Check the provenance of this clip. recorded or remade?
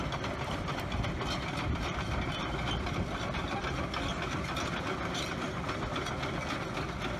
recorded